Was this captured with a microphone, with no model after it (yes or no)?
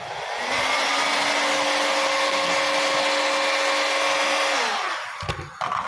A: yes